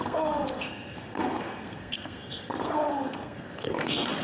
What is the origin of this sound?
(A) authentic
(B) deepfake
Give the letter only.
B